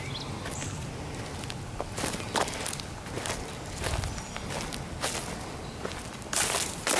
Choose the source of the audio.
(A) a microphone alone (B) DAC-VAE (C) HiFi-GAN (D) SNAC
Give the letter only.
A